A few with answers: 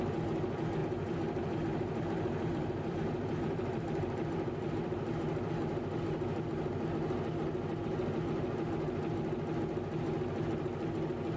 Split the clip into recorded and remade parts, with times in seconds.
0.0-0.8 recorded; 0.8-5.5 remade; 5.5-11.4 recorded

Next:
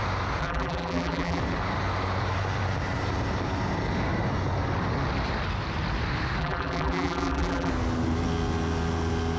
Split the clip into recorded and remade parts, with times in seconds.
0.0-0.4 recorded; 0.4-1.4 remade; 1.4-6.4 recorded; 6.4-7.7 remade; 7.7-9.4 recorded

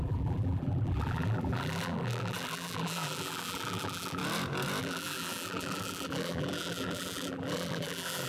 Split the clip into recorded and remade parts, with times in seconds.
0.0-4.2 remade; 4.2-4.8 recorded; 4.8-8.3 remade

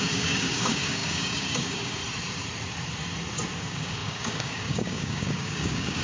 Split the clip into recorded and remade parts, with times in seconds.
0.0-2.0 remade; 2.0-3.6 recorded; 3.6-6.0 remade

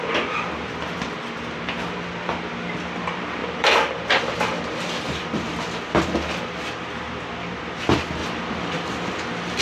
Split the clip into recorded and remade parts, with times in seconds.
0.0-3.4 recorded; 3.4-5.1 remade; 5.1-8.2 recorded; 8.2-9.6 remade

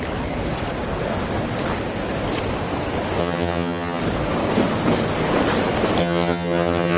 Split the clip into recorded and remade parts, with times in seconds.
0.0-3.2 recorded; 3.2-4.0 remade; 4.0-6.0 recorded; 6.0-7.0 remade

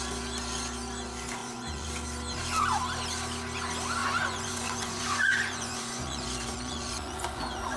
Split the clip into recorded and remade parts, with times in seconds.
0.0-1.4 recorded; 1.4-1.9 remade; 1.9-4.0 recorded; 4.0-7.8 remade

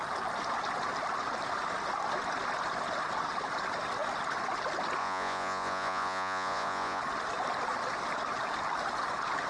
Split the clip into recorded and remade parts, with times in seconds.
0.0-5.0 recorded; 5.0-7.0 remade; 7.0-9.5 recorded